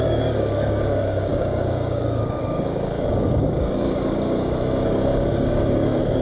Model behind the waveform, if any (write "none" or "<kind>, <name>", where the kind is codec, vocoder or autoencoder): codec, DAC